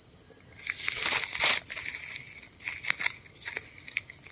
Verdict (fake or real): real